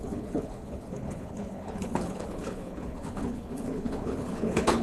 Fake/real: fake